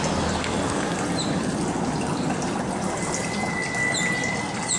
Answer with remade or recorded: recorded